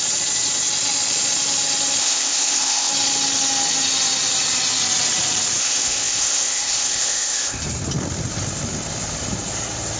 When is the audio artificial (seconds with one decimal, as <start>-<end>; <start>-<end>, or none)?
2.0-2.9; 5.6-7.6